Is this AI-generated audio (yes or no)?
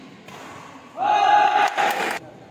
no